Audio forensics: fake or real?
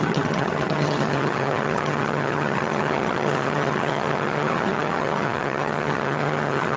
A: fake